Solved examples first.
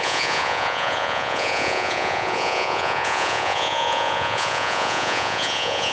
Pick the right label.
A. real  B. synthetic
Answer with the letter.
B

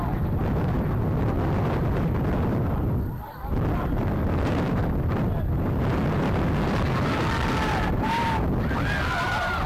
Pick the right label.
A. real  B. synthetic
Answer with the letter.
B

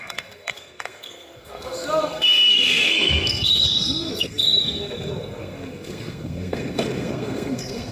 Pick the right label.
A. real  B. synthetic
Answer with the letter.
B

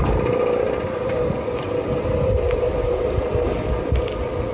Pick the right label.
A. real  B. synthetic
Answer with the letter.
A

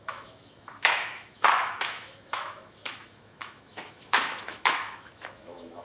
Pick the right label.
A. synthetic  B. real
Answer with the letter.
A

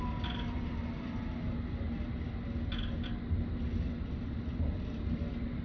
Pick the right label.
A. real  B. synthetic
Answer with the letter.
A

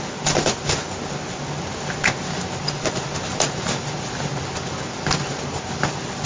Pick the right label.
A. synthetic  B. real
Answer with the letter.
B